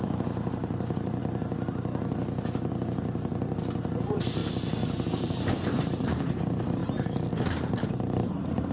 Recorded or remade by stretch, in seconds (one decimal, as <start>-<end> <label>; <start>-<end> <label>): 0.0-1.2 remade; 1.2-4.0 recorded; 4.0-4.4 remade; 4.4-5.1 recorded; 5.1-6.8 remade; 6.8-7.4 recorded; 7.4-8.7 remade